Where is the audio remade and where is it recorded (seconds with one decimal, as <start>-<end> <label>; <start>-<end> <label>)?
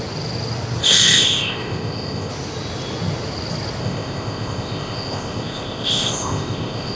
0.0-0.8 recorded; 0.8-2.3 remade; 2.3-3.8 recorded; 3.8-7.0 remade